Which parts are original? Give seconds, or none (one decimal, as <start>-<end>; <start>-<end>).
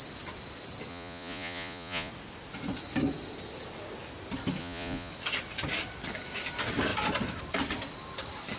0.0-0.9; 2.1-4.6; 5.1-8.6